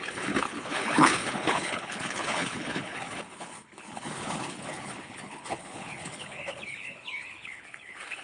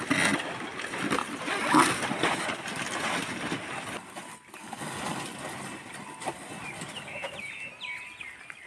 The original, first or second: second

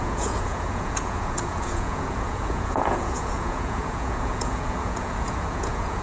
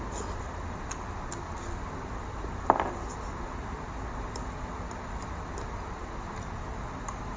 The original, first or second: second